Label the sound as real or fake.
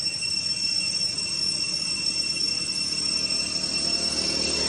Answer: real